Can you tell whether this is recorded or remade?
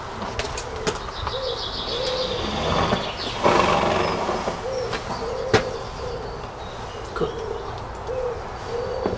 recorded